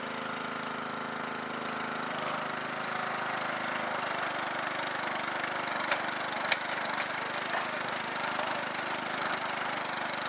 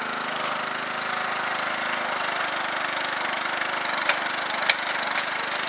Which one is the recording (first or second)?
second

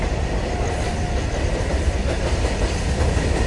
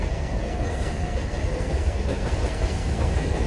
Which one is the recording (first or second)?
first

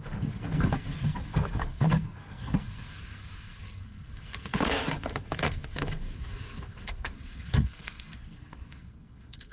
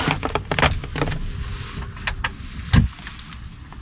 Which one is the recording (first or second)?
second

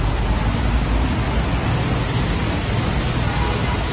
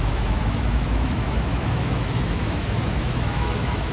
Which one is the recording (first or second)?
first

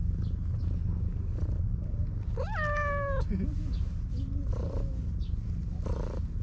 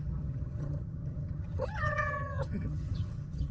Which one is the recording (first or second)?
first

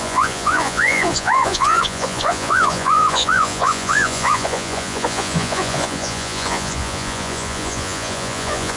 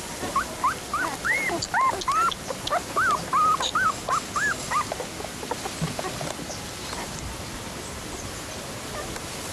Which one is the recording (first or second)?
second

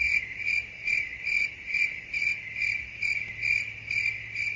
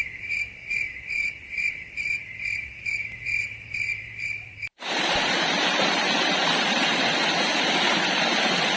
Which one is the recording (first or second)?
first